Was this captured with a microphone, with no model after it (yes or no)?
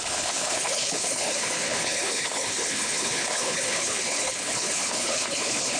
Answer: no